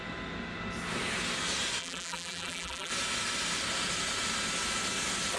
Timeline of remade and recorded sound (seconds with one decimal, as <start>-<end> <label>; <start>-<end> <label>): 0.0-1.8 recorded; 1.8-2.9 remade; 2.9-5.4 recorded